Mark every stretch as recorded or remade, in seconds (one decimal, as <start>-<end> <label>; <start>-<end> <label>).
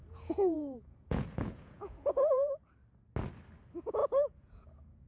0.0-2.5 remade; 2.5-4.0 recorded; 4.0-5.1 remade